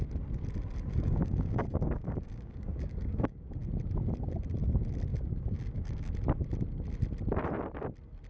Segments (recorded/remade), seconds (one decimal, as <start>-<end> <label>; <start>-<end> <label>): 0.0-0.9 recorded; 0.9-3.5 remade; 3.5-5.1 recorded; 5.1-6.1 remade; 6.1-8.3 recorded